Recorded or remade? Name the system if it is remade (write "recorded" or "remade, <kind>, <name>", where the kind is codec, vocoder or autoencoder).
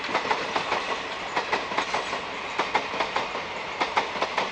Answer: recorded